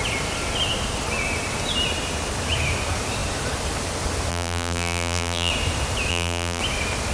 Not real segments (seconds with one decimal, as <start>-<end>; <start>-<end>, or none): 4.3-5.5; 6.1-6.6